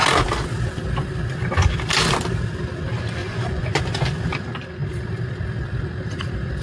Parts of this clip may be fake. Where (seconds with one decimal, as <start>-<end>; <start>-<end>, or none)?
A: 3.2-3.8